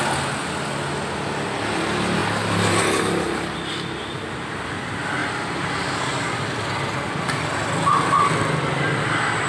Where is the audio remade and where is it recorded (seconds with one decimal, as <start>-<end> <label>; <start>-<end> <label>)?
0.0-5.2 recorded; 5.2-6.0 remade; 6.0-9.5 recorded